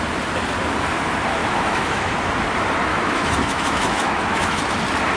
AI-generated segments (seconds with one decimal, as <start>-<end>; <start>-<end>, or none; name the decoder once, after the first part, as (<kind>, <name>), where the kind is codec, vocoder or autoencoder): 1.4-2.1 (autoencoder, DAC-VAE); 2.9-4.6